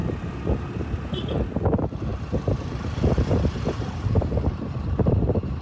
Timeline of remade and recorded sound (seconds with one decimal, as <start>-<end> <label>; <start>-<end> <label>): 0.0-0.7 remade; 0.7-2.1 recorded; 2.1-5.6 remade